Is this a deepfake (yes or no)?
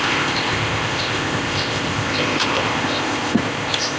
yes